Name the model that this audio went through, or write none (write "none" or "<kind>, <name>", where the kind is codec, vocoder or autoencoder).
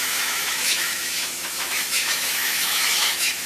autoencoder, DAC-VAE